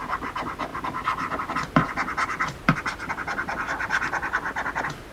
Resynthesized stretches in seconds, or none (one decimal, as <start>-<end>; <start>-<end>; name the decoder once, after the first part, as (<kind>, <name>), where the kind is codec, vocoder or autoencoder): none